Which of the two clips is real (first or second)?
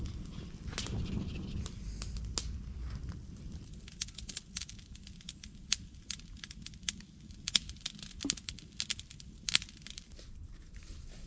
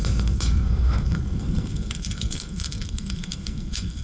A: first